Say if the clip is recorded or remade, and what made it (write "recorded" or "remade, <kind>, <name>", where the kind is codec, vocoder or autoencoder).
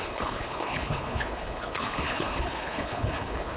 remade, codec, HILCodec